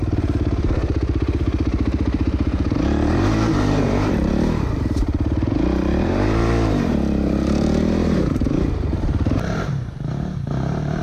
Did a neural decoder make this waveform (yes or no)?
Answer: yes